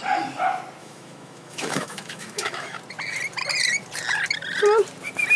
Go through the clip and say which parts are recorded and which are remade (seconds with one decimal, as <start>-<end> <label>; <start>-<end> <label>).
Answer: 0.0-0.8 recorded; 0.8-2.8 remade; 2.8-5.4 recorded